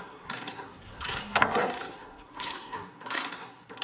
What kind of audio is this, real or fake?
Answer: fake